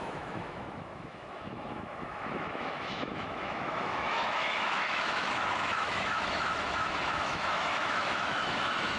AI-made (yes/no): yes